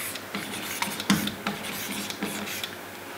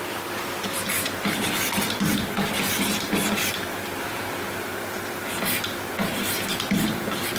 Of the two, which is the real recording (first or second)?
first